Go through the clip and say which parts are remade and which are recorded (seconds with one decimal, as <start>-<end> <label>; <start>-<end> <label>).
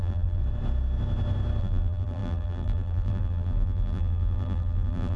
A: 0.0-0.4 remade; 0.4-1.6 recorded; 1.6-5.2 remade